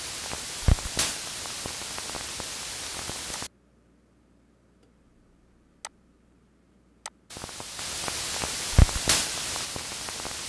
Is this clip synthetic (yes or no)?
no